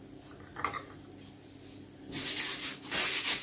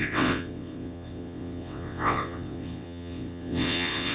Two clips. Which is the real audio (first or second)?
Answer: first